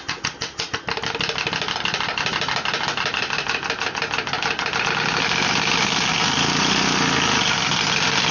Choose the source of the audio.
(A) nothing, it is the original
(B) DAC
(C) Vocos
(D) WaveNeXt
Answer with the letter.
A